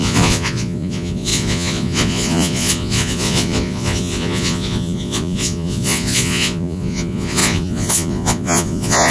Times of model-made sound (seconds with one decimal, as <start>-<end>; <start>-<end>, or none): 0.0-9.1